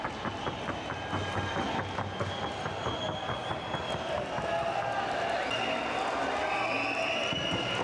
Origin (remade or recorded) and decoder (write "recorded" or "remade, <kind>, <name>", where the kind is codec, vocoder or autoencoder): recorded